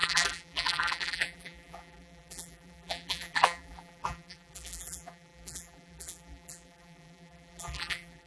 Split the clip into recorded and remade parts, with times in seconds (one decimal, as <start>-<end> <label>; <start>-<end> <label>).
0.0-8.3 remade